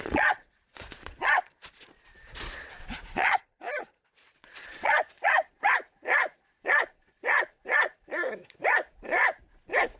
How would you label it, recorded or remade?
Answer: remade